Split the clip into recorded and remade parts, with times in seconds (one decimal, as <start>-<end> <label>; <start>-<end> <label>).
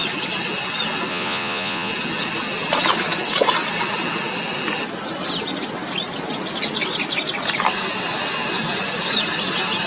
0.0-1.1 recorded; 1.1-1.9 remade; 1.9-9.9 recorded